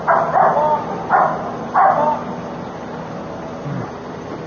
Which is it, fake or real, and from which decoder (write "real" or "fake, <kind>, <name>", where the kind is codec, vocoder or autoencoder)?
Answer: real